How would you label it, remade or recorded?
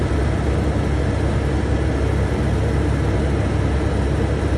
recorded